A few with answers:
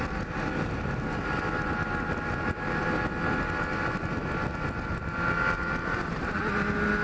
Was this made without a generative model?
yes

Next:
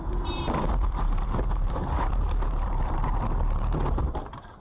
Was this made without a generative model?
no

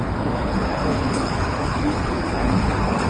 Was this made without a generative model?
no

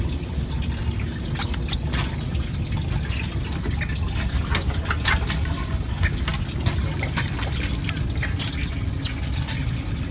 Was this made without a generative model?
yes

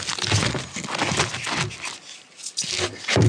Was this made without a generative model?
yes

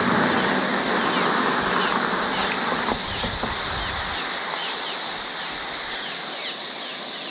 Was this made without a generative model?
yes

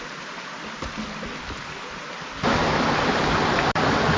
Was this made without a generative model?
yes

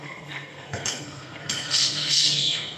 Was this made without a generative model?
no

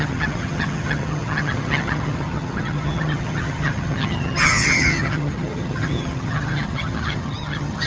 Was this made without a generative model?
no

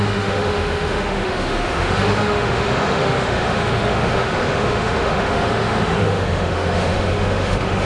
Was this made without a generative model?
no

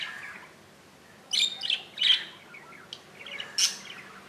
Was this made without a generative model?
yes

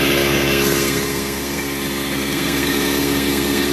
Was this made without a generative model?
no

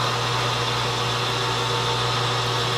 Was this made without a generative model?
yes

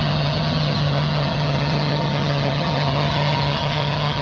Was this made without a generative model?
no